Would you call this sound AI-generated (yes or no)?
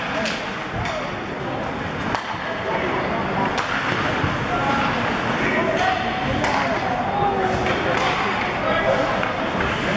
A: no